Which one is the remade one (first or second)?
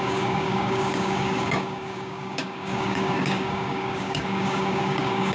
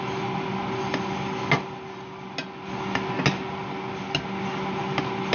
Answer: first